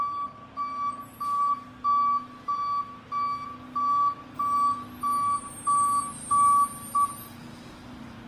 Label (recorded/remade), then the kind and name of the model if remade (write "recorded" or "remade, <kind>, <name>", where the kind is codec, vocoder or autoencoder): recorded